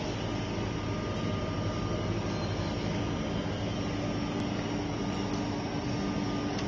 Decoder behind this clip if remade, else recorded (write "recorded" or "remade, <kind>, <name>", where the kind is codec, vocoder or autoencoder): recorded